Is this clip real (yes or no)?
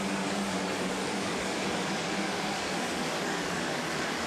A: no